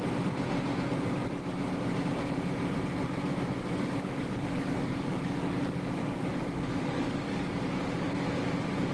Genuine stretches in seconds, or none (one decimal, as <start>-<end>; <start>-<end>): 0.0-3.6; 8.1-8.9

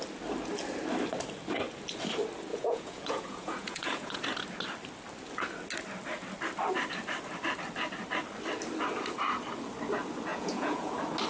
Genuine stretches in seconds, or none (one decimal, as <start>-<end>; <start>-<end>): 0.0-2.5; 4.2-10.3; 10.9-11.3